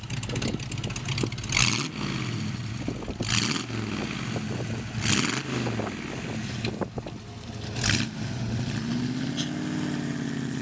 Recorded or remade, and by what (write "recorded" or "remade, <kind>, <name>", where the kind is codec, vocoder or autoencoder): recorded